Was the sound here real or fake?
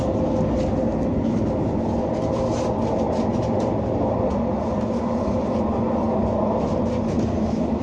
real